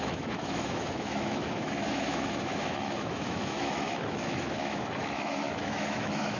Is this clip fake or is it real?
fake